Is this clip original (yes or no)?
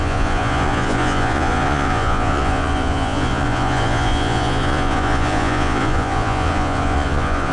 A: no